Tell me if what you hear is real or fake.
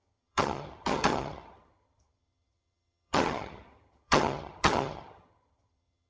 fake